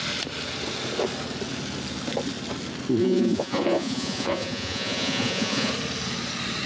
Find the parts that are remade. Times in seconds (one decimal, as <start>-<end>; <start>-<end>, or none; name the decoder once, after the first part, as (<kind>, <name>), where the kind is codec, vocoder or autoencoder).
3.0-5.7 (vocoder, Vocos)